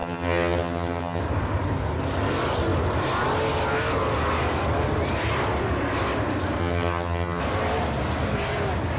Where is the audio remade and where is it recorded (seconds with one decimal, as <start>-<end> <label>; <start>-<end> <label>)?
0.0-1.2 remade; 1.2-6.6 recorded; 6.6-7.4 remade; 7.4-9.0 recorded